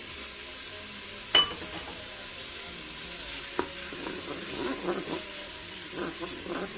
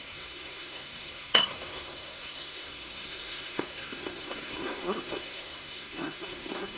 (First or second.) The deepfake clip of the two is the second